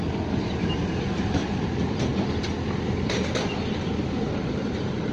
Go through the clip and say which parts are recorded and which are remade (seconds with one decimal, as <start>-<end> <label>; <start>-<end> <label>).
0.0-1.4 remade; 1.4-4.5 recorded; 4.5-5.1 remade